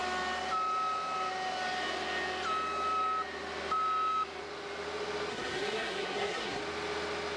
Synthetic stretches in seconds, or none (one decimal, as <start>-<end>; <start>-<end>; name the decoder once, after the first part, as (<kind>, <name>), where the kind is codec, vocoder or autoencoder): 5.3-6.6 (codec, SNAC)